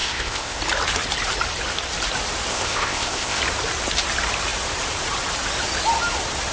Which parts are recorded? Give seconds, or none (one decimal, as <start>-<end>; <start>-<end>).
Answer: 0.6-2.5; 3.4-6.5